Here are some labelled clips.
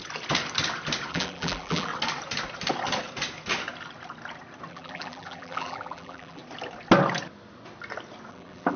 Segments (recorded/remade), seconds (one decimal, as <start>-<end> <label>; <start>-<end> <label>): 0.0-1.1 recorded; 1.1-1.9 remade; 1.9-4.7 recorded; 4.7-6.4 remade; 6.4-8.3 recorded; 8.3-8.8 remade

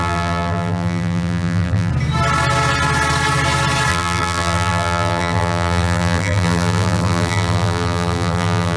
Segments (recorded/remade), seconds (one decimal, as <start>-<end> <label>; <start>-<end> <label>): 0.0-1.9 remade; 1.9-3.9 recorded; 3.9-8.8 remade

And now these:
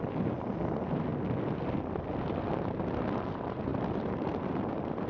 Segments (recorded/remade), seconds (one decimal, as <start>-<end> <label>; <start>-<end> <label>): 0.0-3.7 recorded; 3.7-5.1 remade

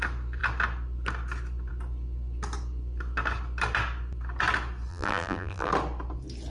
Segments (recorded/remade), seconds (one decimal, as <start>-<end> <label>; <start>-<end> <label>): 0.0-4.9 recorded; 4.9-5.7 remade; 5.7-6.5 recorded